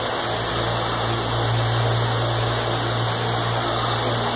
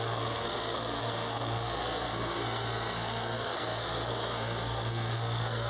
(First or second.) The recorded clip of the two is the first